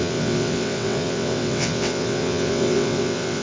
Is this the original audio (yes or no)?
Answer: no